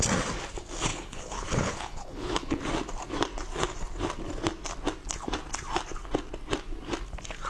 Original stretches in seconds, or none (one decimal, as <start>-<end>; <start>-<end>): 0.0-0.9; 2.6-7.5